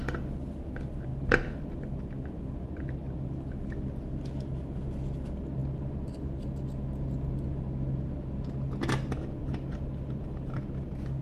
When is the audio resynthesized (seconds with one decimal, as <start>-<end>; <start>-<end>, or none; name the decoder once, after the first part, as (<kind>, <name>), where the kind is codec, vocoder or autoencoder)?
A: none